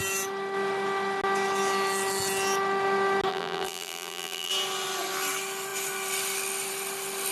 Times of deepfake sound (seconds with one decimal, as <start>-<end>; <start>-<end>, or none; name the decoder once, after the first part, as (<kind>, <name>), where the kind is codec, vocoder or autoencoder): 3.3-4.5 (vocoder, BigVGAN v2)